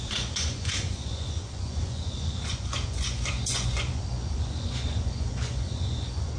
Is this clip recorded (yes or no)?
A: no